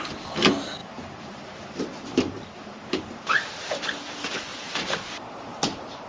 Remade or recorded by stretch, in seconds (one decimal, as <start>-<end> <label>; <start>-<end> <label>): 0.0-0.8 recorded; 0.8-1.4 remade; 1.4-2.1 recorded; 2.1-3.5 remade; 3.5-4.5 recorded; 4.5-5.5 remade; 5.5-6.1 recorded

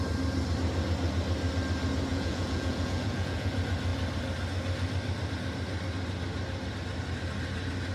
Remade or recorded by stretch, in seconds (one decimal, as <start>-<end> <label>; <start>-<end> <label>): 0.0-2.1 recorded; 2.1-3.5 remade; 3.5-7.9 recorded